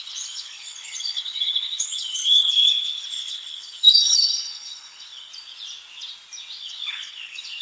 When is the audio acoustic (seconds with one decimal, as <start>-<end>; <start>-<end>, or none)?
5.3-6.6